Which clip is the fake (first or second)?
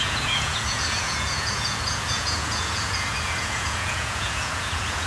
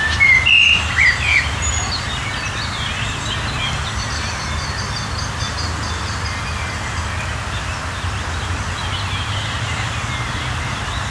first